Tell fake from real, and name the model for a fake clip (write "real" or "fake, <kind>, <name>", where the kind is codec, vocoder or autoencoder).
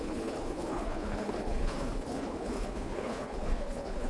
fake, codec, HILCodec